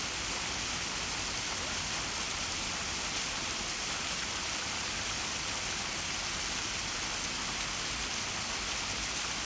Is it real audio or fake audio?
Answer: real